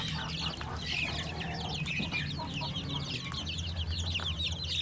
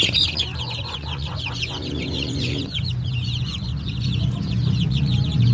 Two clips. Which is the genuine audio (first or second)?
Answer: first